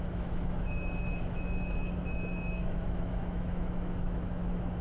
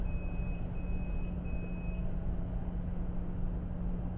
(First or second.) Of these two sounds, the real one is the second